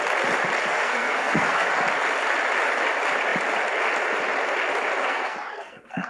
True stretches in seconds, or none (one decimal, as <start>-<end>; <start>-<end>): 0.0-0.7; 1.7-5.0